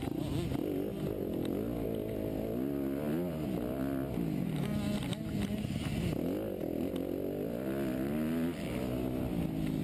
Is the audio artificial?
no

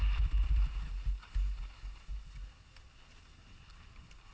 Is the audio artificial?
no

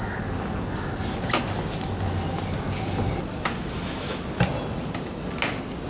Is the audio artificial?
no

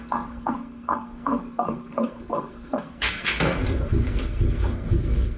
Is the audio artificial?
yes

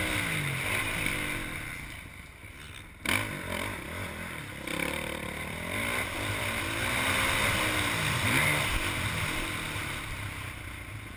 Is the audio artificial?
no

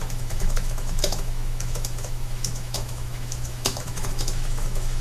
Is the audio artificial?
yes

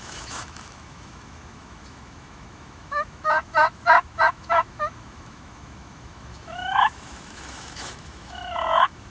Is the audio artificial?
yes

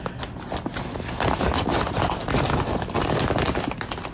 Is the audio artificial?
no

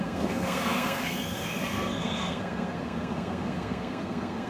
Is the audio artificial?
yes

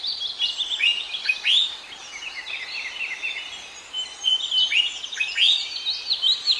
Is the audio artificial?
no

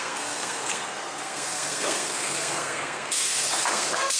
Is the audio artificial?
yes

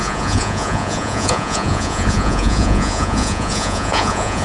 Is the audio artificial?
yes